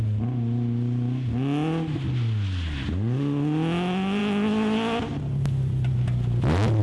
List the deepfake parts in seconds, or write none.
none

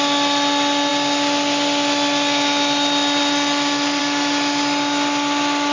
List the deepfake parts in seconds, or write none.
none

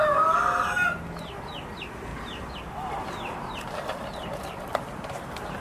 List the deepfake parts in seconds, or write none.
2.1-5.6

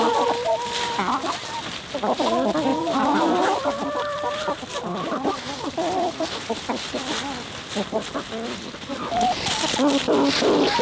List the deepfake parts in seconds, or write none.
2.7-4.8; 5.3-7.2

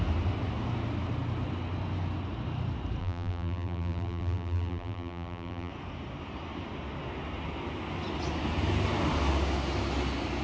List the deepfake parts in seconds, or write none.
3.0-5.7